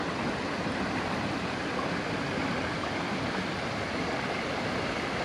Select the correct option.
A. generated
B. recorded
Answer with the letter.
B